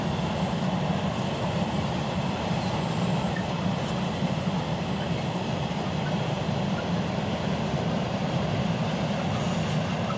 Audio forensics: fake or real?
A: real